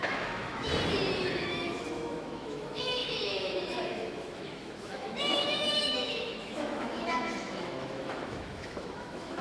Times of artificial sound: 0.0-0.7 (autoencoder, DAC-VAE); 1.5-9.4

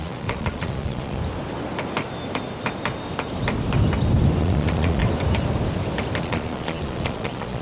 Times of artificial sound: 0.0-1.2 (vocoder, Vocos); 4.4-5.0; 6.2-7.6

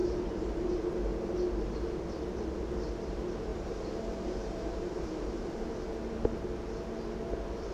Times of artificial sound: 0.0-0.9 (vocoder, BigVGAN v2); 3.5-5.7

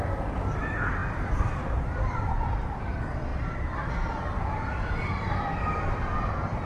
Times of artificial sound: 1.0-2.2 (vocoder, BigVGAN v2); 3.3-3.9; 4.7-6.1